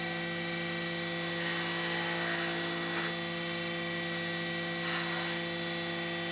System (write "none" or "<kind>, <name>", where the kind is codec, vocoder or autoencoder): none